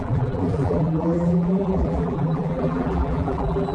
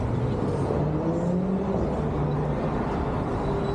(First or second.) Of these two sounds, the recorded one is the second